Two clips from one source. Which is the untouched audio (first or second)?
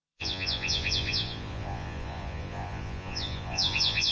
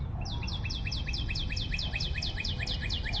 second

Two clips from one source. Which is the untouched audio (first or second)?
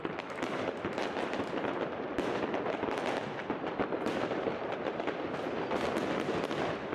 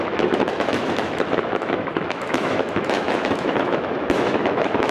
first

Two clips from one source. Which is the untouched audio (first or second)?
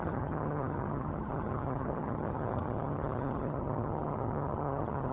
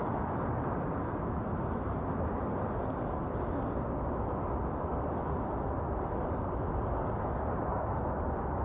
second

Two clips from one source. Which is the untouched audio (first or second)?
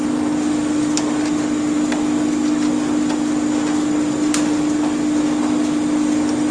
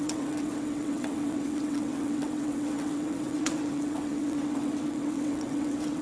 first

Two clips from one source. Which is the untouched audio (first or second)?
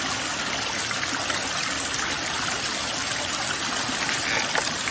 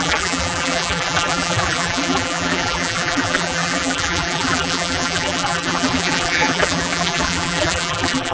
first